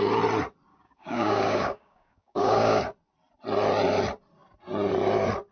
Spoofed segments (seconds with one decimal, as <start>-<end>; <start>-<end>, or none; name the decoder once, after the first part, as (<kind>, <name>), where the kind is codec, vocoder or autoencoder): 0.7-2.8 (codec, DAC)